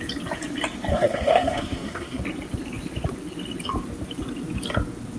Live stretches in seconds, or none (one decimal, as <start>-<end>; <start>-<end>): 0.0-0.9; 2.2-5.2